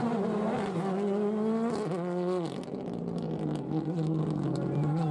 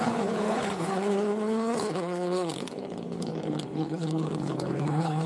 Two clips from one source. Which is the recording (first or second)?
first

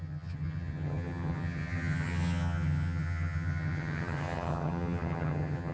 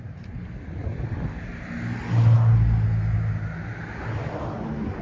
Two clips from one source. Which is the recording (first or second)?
second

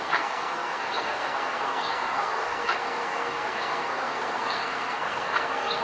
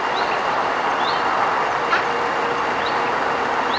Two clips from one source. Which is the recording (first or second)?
second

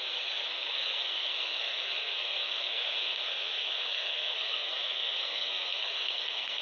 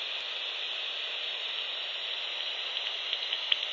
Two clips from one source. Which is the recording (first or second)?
second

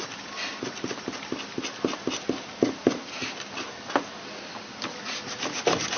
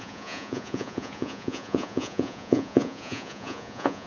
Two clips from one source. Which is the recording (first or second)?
first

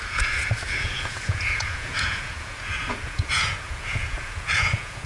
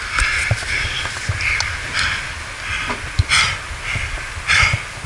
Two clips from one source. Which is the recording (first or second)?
second